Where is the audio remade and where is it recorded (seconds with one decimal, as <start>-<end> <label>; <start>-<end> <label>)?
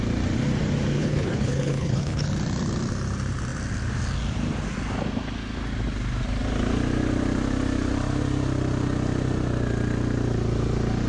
0.0-1.0 recorded; 1.0-2.3 remade; 2.3-11.1 recorded